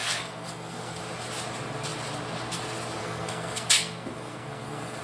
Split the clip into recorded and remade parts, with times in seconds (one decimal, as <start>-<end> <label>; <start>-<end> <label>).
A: 0.0-1.0 remade; 1.0-3.0 recorded; 3.0-5.0 remade